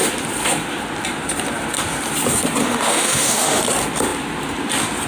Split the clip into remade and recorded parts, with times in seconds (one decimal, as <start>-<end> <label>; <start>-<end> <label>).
0.0-2.6 recorded; 2.6-3.6 remade; 3.6-5.1 recorded